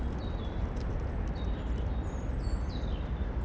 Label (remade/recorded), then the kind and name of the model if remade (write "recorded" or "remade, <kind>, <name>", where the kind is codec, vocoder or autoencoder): recorded